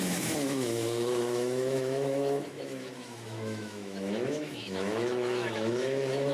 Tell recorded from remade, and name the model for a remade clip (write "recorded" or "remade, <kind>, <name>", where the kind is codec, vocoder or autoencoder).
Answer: remade, autoencoder, DAC-VAE